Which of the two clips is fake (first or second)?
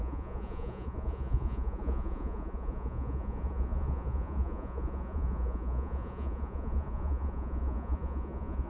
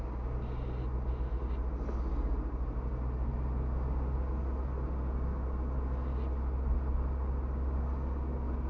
first